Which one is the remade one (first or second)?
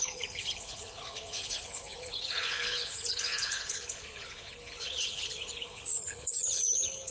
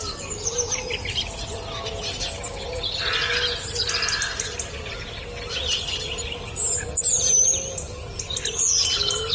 first